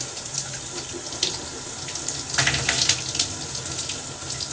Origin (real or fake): real